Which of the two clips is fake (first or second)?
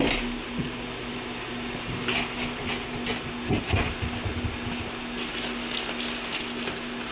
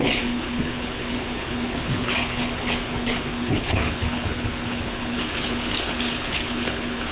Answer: second